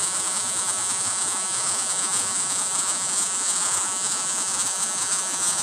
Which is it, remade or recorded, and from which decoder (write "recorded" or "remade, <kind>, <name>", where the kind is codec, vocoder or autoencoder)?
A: remade, vocoder, Vocos